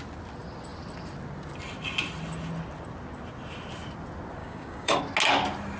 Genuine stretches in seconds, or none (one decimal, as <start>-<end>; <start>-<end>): 0.0-4.4; 5.0-5.8